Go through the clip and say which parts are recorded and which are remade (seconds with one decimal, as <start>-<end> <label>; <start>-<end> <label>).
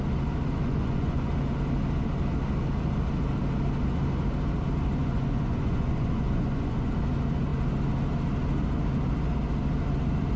0.0-0.6 recorded; 0.6-1.3 remade; 1.3-5.0 recorded; 5.0-6.9 remade; 6.9-10.4 recorded